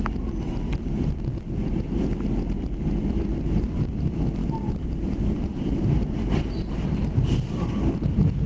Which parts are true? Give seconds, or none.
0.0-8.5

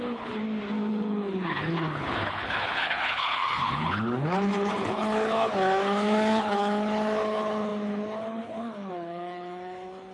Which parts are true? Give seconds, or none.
0.4-0.9

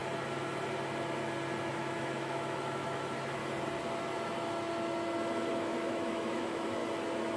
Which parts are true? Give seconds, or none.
0.0-1.7; 3.4-5.5; 6.8-7.4

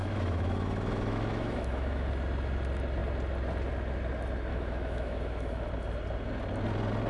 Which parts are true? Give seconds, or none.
2.1-4.5; 5.7-7.1

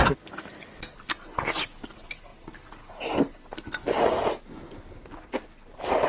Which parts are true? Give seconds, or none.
0.0-6.1

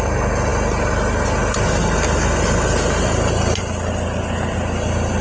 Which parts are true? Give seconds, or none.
0.0-5.2

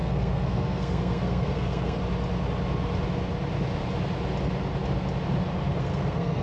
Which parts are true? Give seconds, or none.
2.0-5.8